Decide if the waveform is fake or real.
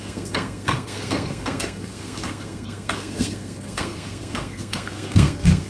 fake